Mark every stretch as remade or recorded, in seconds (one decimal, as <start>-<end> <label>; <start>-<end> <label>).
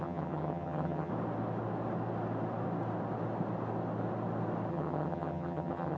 0.0-1.1 remade; 1.1-4.7 recorded; 4.7-6.0 remade